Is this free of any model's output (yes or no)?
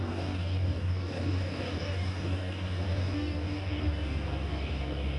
no